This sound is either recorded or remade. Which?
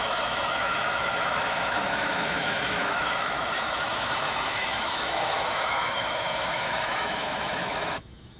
remade